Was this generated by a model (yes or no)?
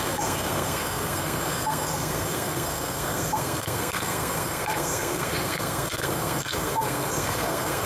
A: yes